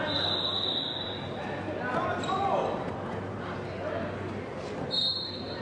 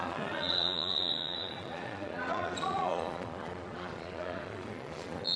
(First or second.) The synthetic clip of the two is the second